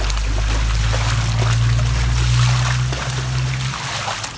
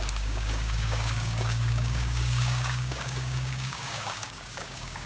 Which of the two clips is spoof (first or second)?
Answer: second